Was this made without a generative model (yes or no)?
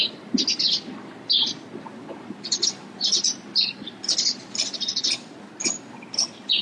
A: yes